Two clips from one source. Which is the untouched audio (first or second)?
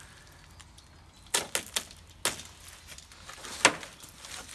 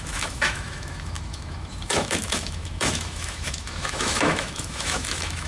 first